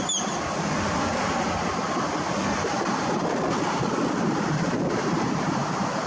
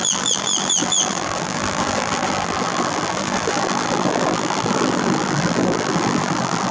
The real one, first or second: first